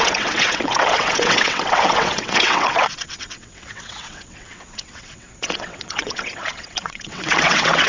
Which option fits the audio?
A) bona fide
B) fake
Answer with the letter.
B